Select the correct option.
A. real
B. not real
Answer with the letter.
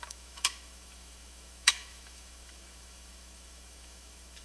B